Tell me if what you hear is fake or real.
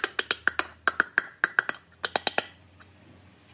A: real